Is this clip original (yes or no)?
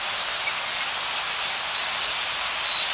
yes